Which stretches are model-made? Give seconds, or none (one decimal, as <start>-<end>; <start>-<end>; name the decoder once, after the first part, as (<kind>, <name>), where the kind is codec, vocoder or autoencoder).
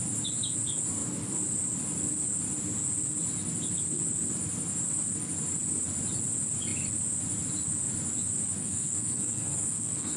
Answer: 8.6-10.2 (codec, SNAC)